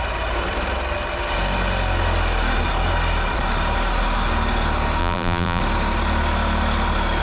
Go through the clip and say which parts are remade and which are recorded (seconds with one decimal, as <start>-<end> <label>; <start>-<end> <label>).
0.0-5.0 recorded; 5.0-5.6 remade; 5.6-7.2 recorded